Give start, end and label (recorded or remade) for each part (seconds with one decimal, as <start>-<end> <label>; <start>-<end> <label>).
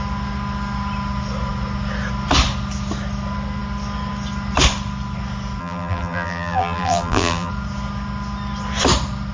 0.0-5.6 recorded; 5.6-7.5 remade; 7.5-9.3 recorded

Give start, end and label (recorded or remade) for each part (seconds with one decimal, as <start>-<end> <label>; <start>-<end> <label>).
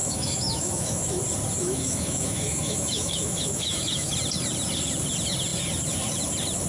0.0-1.2 remade; 1.2-1.6 recorded; 1.6-4.1 remade; 4.1-6.7 recorded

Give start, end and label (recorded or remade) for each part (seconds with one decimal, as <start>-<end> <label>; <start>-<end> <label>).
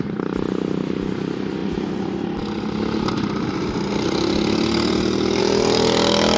0.0-6.4 recorded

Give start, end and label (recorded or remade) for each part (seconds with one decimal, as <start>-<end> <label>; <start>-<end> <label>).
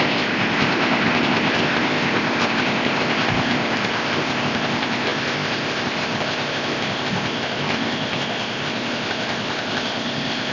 0.0-10.5 remade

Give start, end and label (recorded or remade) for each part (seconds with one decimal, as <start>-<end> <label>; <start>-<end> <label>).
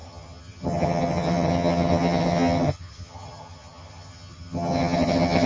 0.0-5.5 remade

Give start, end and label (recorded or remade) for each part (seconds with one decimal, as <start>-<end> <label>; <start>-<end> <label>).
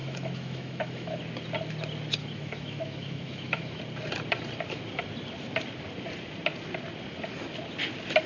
0.0-1.2 remade; 1.2-2.2 recorded; 2.2-3.8 remade; 3.8-8.3 recorded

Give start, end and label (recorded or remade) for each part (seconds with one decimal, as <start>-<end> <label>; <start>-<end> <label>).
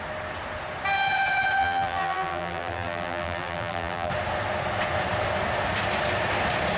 0.0-1.6 recorded; 1.6-4.1 remade; 4.1-6.8 recorded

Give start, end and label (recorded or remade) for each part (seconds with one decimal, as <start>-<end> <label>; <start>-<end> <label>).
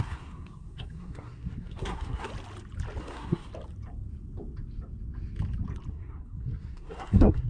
0.0-2.3 remade; 2.3-3.0 recorded; 3.0-3.5 remade; 3.5-5.9 recorded; 5.9-7.5 remade